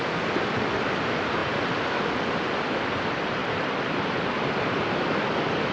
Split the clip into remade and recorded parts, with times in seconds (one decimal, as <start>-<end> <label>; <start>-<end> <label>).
0.0-1.4 remade; 1.4-3.0 recorded; 3.0-5.7 remade